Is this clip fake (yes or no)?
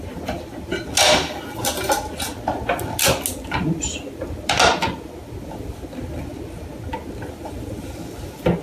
no